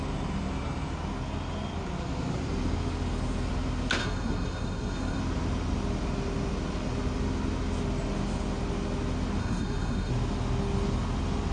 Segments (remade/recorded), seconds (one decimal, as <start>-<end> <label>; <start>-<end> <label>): 0.0-4.0 recorded; 4.0-5.2 remade; 5.2-9.4 recorded; 9.4-10.1 remade; 10.1-11.5 recorded